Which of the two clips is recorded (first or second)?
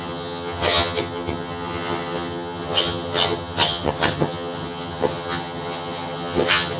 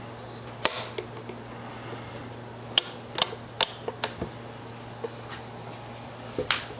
second